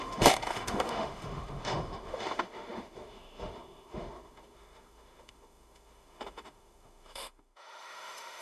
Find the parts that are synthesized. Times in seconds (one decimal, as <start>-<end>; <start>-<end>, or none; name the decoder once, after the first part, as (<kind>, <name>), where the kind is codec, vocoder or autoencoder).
0.0-8.4 (autoencoder, DAC-VAE)